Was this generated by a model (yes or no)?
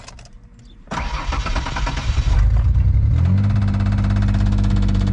no